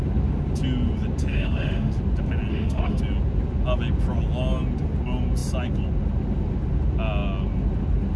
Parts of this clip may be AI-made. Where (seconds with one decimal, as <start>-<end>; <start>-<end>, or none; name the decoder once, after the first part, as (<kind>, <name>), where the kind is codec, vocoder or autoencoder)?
1.3-1.9 (autoencoder, DAC-VAE); 2.5-3.0